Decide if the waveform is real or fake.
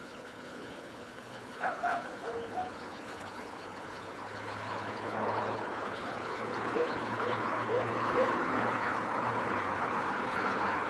fake